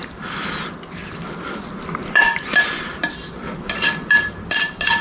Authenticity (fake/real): real